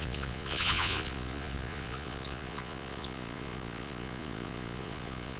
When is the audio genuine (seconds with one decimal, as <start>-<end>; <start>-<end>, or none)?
none